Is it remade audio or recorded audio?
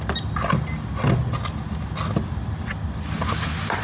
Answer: recorded